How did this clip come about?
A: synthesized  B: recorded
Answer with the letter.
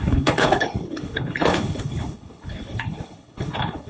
A